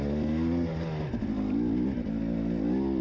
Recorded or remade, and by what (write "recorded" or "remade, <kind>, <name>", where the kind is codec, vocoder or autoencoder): recorded